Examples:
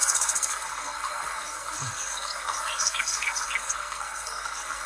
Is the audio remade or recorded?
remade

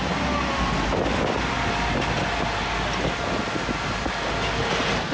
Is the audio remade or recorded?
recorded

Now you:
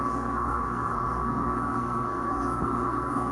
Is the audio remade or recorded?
remade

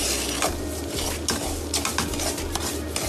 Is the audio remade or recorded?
recorded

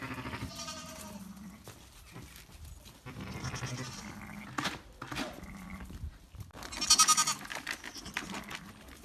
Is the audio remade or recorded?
recorded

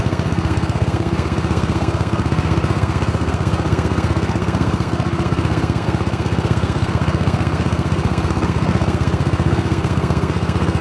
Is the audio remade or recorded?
remade